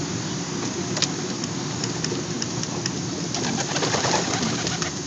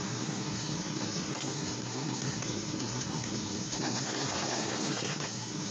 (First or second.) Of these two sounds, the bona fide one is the first